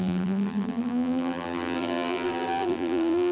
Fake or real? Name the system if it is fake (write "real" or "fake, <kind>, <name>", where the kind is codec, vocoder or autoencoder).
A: fake, vocoder, BigVGAN v2